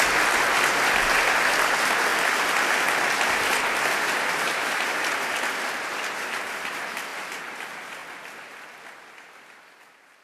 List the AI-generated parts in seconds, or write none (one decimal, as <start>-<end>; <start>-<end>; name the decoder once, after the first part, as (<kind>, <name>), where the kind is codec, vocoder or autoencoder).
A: none